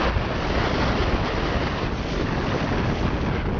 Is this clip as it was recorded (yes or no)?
yes